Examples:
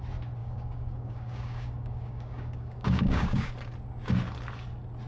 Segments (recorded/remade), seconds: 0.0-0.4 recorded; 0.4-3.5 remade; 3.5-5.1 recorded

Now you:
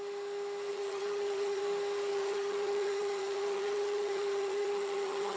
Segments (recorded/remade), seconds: 0.0-0.7 recorded; 0.7-1.6 remade; 1.6-2.1 recorded; 2.1-5.4 remade

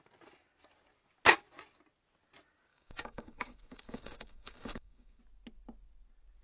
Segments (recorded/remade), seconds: 0.0-2.7 recorded; 2.7-5.2 remade; 5.2-6.4 recorded